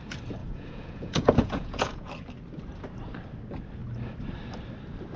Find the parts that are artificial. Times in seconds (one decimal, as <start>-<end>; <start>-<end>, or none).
0.4-2.1